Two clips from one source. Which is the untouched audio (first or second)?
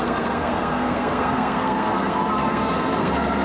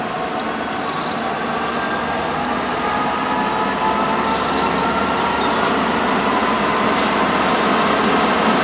second